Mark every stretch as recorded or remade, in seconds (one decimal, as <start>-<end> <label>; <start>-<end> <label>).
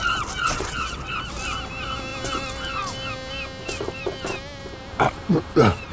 0.0-0.4 recorded; 0.4-1.1 remade; 1.1-5.9 recorded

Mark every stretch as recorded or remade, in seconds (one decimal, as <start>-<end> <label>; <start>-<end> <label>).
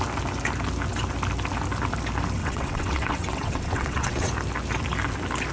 0.0-2.4 recorded; 2.4-4.3 remade; 4.3-5.5 recorded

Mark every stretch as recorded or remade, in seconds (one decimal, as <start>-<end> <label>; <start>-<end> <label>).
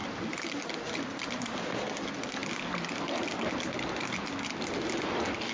0.0-5.5 recorded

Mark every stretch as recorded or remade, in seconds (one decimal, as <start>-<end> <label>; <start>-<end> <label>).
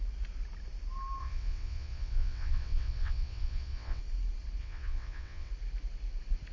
0.0-1.2 recorded; 1.2-4.0 remade; 4.0-4.6 recorded; 4.6-5.5 remade; 5.5-6.5 recorded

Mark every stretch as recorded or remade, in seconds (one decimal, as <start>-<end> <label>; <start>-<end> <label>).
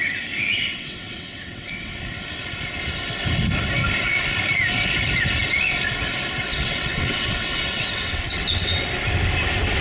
0.0-0.5 recorded; 0.5-2.0 remade; 2.0-6.5 recorded; 6.5-8.8 remade; 8.8-9.8 recorded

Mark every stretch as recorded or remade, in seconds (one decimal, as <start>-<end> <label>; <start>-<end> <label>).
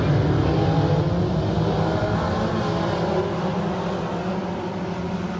0.0-5.4 recorded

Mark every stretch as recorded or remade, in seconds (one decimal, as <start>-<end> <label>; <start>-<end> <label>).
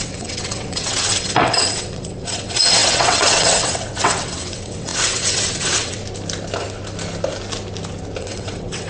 0.0-6.0 remade; 6.0-8.2 recorded; 8.2-8.9 remade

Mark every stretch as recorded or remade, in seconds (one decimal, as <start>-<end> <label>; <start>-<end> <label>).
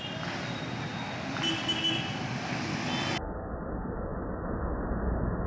0.0-5.5 recorded